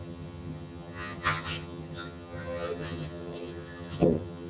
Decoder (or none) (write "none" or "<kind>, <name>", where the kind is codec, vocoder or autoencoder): vocoder, HiFi-GAN